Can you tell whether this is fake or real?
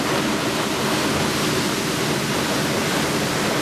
real